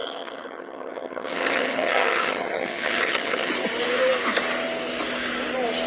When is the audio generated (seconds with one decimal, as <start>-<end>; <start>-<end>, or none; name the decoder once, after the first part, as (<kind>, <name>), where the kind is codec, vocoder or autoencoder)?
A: 0.0-3.5 (vocoder, HiFi-GAN)